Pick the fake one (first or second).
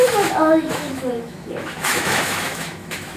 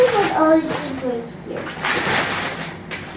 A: first